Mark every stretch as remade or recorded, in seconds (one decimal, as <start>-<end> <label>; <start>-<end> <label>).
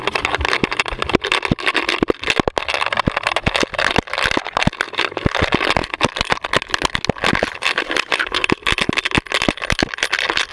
0.0-10.5 recorded